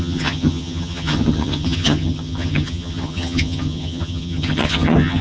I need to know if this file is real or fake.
fake